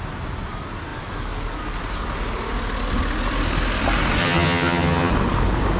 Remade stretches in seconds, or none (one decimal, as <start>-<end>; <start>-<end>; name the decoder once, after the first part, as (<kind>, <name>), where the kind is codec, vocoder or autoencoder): 4.2-5.1 (vocoder, HiFi-GAN)